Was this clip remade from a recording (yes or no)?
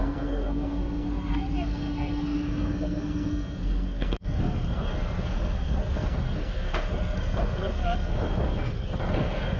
yes